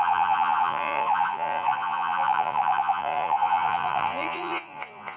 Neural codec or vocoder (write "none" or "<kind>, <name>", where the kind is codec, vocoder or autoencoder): vocoder, Vocos